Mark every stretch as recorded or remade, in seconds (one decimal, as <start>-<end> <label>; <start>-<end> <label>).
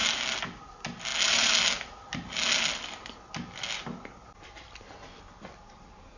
0.0-6.2 recorded